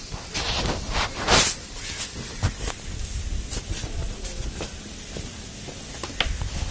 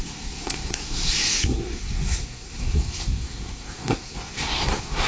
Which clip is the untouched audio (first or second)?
first